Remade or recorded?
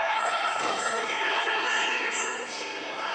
remade